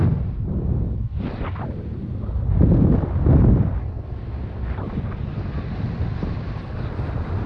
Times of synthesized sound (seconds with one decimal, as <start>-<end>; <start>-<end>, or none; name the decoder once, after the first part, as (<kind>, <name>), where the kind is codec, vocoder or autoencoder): none